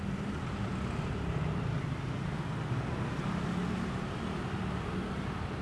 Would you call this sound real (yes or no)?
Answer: yes